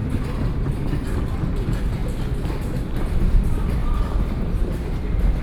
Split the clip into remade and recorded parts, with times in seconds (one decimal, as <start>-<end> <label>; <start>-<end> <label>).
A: 0.0-0.6 recorded; 0.6-2.0 remade; 2.0-2.7 recorded; 2.7-5.4 remade